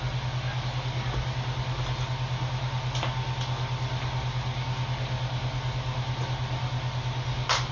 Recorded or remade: recorded